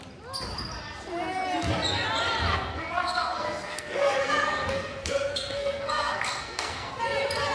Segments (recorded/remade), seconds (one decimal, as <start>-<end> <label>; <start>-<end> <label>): 0.0-2.5 recorded; 2.5-7.0 remade; 7.0-7.5 recorded